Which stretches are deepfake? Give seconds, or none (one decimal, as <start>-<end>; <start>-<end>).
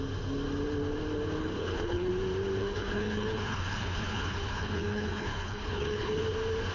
1.4-2.1; 2.6-6.2